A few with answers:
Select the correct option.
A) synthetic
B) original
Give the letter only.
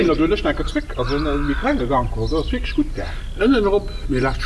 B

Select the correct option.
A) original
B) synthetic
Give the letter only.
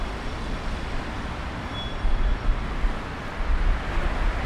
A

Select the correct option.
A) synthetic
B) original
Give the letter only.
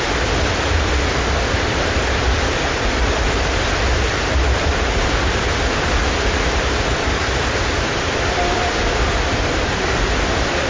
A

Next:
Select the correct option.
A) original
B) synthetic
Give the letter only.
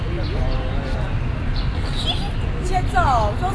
A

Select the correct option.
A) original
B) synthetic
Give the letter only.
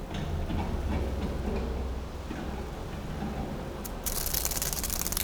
A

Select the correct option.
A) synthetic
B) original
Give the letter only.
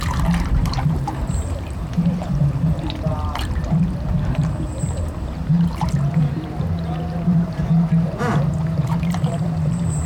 A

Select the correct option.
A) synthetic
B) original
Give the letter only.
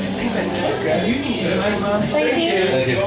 B